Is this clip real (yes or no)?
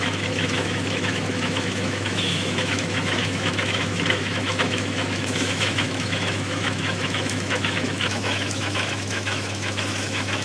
no